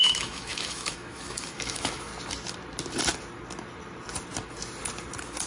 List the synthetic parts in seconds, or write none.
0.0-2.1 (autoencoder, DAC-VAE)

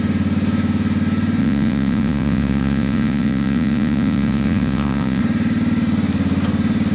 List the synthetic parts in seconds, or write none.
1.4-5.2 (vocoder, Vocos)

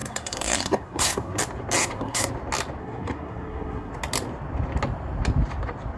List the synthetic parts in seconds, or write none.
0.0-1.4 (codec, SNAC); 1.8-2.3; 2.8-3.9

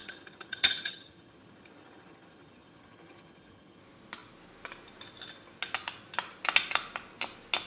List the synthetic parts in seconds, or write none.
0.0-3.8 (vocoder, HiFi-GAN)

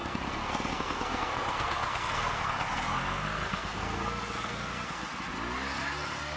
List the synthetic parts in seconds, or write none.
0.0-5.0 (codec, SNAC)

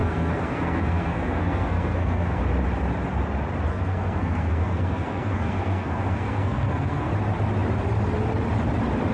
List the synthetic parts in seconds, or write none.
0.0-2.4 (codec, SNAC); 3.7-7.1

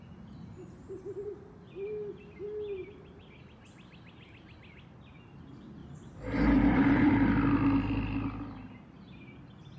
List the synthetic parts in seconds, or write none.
0.5-1.7 (vocoder, BigVGAN v2); 5.8-7.1

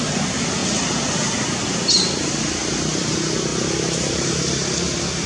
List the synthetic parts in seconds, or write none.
none